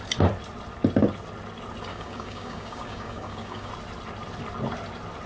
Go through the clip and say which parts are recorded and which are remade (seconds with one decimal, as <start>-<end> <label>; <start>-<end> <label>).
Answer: 0.0-1.9 recorded; 1.9-3.7 remade; 3.7-5.3 recorded